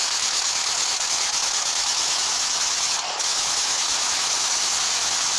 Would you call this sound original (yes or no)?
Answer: no